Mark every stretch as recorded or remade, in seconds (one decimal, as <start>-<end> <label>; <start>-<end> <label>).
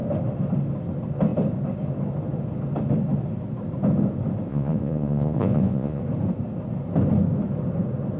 0.0-4.5 recorded; 4.5-6.0 remade; 6.0-8.2 recorded